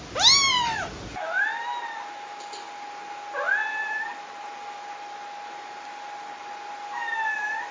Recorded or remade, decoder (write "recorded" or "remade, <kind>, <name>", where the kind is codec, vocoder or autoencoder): recorded